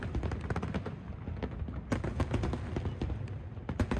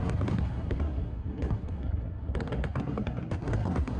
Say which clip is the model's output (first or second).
second